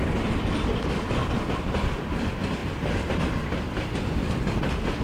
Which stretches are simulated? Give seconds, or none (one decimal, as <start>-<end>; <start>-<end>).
none